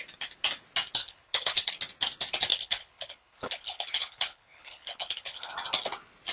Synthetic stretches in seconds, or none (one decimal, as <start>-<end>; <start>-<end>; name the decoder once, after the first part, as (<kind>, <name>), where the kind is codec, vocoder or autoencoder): 1.0-1.7 (codec, HILCodec); 2.5-5.5